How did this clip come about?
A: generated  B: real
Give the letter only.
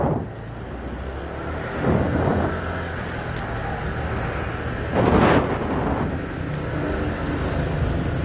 B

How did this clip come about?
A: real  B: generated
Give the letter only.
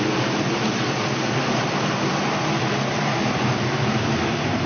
B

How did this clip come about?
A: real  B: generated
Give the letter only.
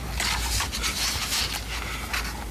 A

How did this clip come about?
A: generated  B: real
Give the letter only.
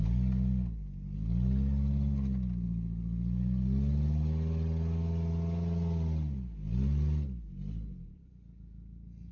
B